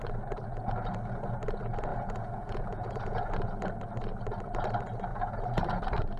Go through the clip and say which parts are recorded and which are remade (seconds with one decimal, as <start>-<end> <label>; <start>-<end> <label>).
0.0-1.9 recorded; 1.9-3.3 remade; 3.3-5.1 recorded; 5.1-5.8 remade; 5.8-6.2 recorded